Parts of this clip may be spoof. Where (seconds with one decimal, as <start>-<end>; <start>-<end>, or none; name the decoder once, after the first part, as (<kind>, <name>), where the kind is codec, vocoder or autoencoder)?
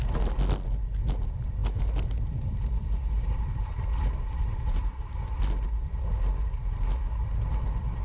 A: 1.6-5.1 (vocoder, BigVGAN v2); 5.8-7.0